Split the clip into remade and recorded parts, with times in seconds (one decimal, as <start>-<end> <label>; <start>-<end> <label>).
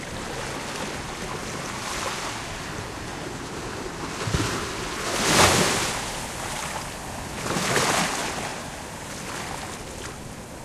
0.0-1.4 recorded; 1.4-4.7 remade; 4.7-8.5 recorded; 8.5-9.1 remade; 9.1-10.6 recorded